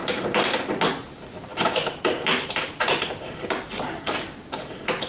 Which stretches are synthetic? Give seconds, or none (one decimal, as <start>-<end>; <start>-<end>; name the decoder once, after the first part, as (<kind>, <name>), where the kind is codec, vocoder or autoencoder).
none